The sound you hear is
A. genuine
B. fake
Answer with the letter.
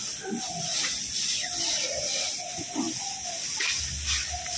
A